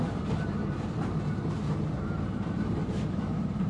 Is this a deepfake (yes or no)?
yes